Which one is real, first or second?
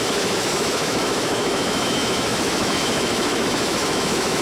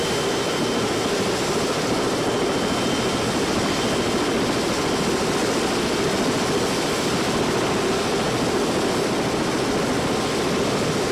second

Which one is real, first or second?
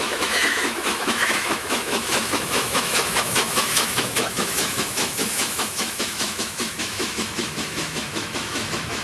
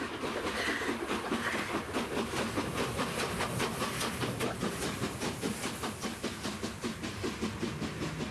second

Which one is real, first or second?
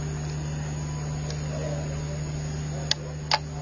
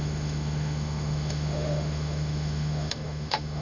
first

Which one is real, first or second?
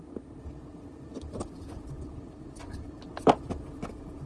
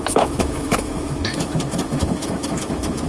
first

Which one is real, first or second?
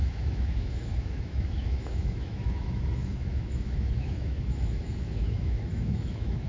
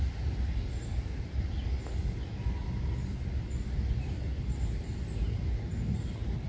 second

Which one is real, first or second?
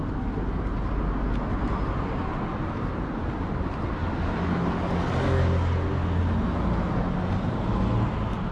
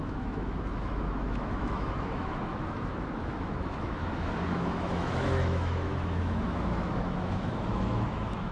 first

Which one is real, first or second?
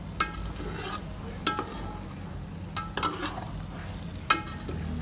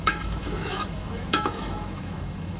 first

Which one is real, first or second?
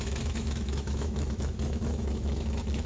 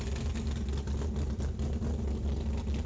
second